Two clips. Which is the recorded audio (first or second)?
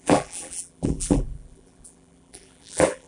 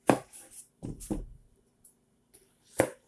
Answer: second